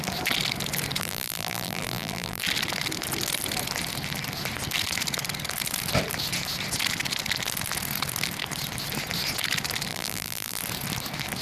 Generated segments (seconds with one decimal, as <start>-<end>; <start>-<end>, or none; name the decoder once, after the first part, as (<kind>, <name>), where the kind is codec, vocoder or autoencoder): 1.0-2.4 (vocoder, BigVGAN v2); 9.9-10.6